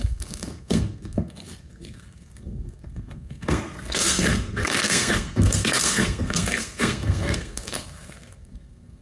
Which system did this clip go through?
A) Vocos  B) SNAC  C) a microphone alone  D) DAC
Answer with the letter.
B